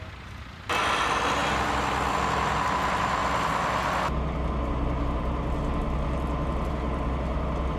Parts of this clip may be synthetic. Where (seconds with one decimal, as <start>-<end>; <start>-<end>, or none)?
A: none